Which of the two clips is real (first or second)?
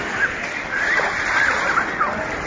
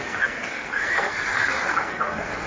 first